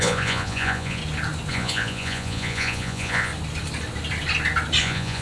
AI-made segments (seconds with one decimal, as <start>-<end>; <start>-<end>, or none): 0.0-1.0; 1.5-3.3; 4.8-5.2